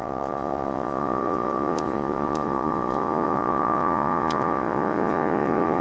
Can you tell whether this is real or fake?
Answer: fake